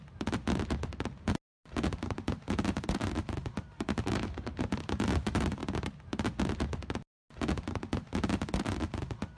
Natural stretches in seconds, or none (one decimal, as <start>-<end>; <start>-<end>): 0.0-1.5; 4.8-9.4